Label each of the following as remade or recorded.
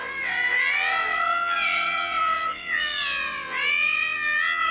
remade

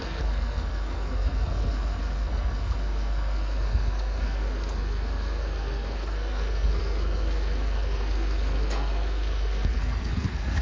remade